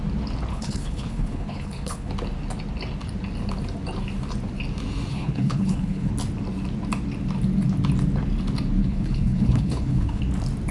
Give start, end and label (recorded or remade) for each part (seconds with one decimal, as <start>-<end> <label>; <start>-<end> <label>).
0.0-0.5 recorded; 0.5-2.1 remade; 2.1-5.1 recorded; 5.1-6.1 remade; 6.1-8.8 recorded; 8.8-10.2 remade; 10.2-10.7 recorded